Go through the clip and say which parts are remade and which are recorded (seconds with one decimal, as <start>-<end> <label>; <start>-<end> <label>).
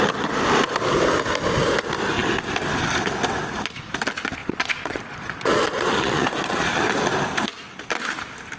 0.0-4.4 recorded; 4.4-6.8 remade; 6.8-8.6 recorded